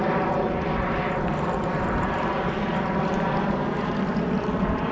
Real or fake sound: real